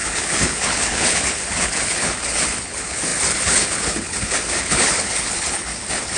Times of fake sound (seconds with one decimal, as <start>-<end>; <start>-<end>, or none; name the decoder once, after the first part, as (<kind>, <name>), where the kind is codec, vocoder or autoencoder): 0.0-6.2 (codec, HILCodec)